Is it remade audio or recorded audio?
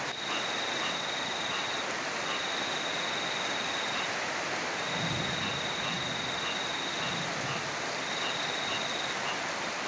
recorded